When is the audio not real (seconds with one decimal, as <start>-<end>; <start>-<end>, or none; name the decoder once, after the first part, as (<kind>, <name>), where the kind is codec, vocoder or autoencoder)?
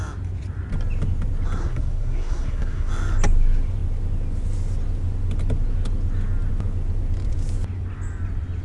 1.6-2.9 (codec, SNAC)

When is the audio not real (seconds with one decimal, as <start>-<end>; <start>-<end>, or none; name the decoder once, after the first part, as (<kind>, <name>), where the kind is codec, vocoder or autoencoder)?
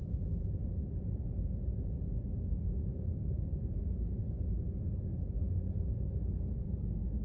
3.6-4.1 (codec, SNAC)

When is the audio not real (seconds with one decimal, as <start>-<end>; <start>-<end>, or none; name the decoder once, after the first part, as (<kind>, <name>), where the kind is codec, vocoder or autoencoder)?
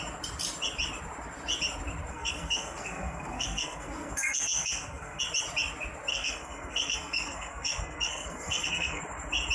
2.1-5.2 (codec, SNAC); 6.1-9.0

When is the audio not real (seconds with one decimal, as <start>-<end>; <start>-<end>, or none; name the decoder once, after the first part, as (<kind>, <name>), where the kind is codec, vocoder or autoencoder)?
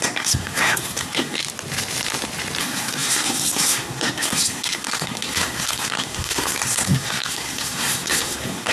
0.0-1.4 (codec, SNAC); 2.6-8.7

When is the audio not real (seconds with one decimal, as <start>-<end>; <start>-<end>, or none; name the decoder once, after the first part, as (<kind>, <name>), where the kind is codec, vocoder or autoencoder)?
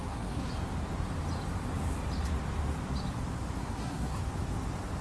0.0-0.5 (codec, SNAC); 3.6-4.2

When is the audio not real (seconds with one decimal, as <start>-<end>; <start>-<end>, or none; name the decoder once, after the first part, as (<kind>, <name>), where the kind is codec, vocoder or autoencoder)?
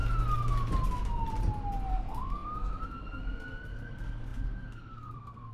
1.9-5.5 (codec, SNAC)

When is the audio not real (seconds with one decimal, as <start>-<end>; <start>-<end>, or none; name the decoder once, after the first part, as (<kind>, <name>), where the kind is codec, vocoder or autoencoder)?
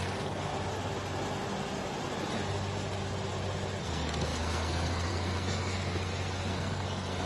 0.0-0.5 (codec, SNAC); 3.8-7.3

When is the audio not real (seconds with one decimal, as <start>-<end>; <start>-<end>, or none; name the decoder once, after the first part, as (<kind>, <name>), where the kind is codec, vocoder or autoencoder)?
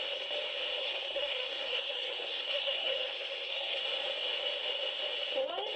0.8-3.8 (codec, SNAC)